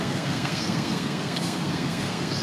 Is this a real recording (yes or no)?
no